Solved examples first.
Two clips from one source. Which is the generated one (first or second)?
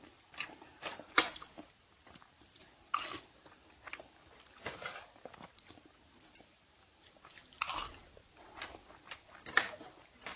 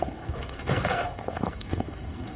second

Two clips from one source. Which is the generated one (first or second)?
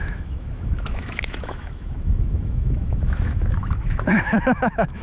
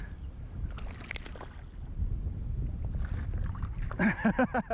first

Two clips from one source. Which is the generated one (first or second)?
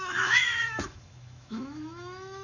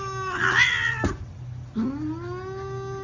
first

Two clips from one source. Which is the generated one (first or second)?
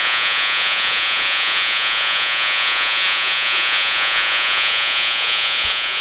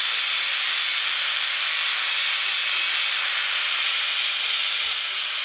first